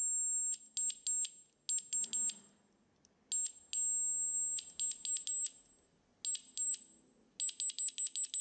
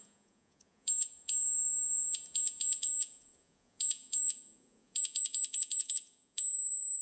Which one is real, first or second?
first